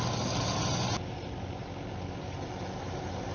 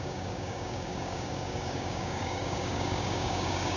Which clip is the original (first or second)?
first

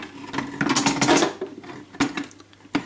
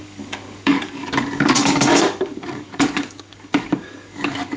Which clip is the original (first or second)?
first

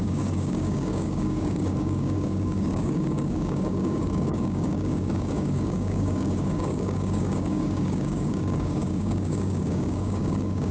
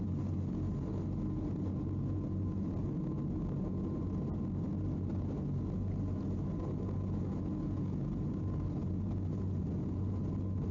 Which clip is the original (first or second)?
second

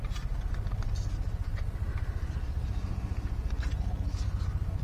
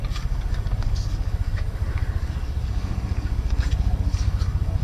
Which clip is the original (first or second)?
first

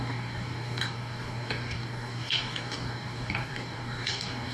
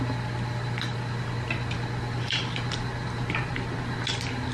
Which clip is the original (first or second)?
second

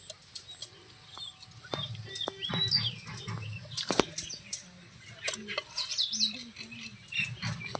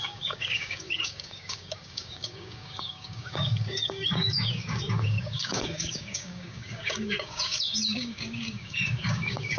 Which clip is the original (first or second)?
first